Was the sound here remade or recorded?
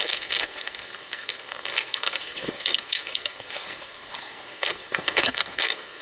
remade